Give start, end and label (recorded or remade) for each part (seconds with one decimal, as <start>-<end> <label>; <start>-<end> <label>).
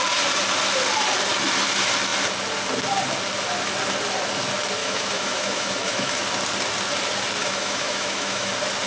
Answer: 0.0-4.8 recorded; 4.8-6.2 remade; 6.2-7.4 recorded; 7.4-8.5 remade; 8.5-8.9 recorded